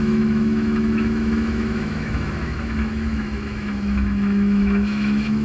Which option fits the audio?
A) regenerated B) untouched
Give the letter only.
A